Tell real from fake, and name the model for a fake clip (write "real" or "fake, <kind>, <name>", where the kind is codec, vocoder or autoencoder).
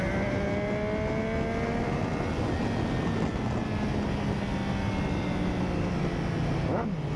real